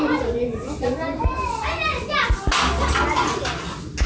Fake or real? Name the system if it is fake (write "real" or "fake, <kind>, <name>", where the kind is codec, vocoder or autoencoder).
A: real